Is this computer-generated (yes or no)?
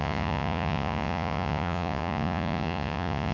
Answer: yes